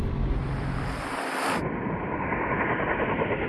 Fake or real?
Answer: fake